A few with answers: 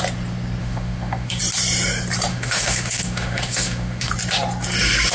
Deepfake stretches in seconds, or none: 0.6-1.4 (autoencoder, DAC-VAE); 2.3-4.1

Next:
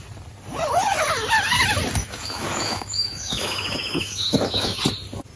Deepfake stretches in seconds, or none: 2.0-4.8 (autoencoder, DAC-VAE)

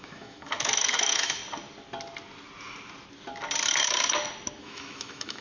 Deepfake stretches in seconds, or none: 0.0-1.4 (autoencoder, DAC-VAE); 4.6-5.4